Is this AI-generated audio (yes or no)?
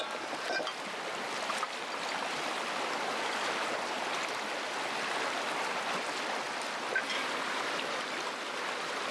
no